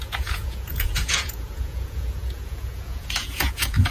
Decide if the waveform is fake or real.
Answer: fake